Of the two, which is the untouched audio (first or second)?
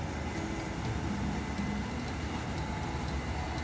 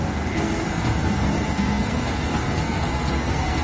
first